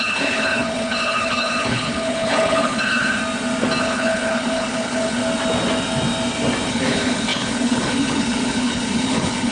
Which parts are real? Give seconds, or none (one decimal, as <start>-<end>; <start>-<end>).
3.2-3.8; 5.2-6.7